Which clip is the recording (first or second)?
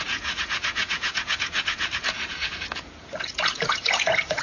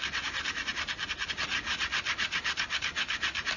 second